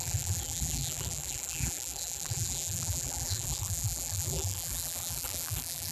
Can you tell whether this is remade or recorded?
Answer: remade